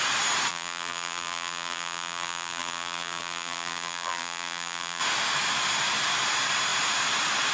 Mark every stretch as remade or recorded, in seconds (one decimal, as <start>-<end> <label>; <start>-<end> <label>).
0.0-0.5 recorded; 0.5-5.0 remade; 5.0-7.5 recorded